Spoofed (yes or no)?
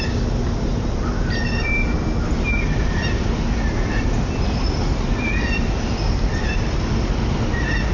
no